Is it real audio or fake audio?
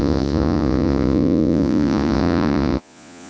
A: fake